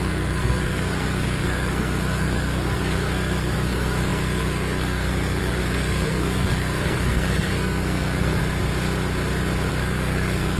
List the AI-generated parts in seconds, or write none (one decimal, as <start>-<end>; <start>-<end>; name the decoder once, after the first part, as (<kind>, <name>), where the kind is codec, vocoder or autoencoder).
0.0-8.4 (codec, SNAC); 9.7-10.6